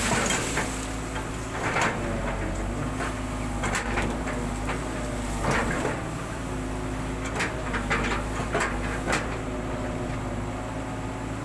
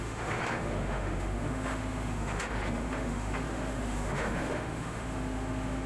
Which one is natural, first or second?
first